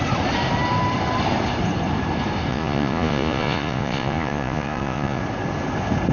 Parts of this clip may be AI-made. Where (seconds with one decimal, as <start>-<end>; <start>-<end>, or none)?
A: 2.5-5.2